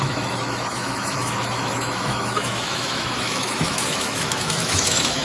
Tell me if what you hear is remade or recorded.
remade